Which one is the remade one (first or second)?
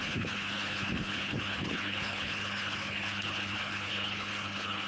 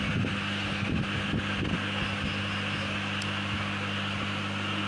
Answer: first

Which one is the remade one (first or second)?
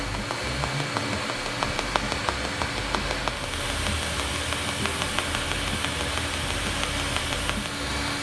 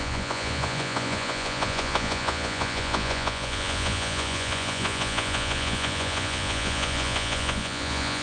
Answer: second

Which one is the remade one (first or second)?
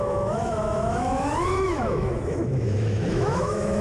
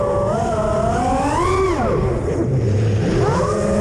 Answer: first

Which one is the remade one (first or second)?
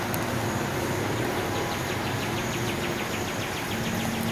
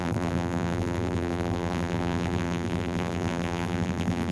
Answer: second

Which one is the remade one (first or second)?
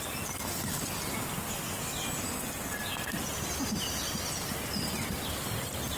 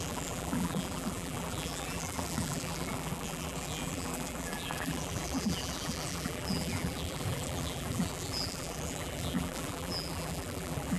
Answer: second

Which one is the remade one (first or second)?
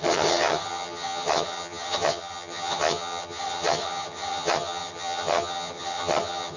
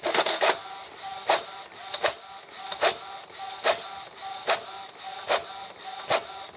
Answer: first